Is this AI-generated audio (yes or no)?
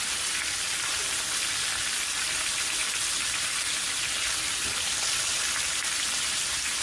no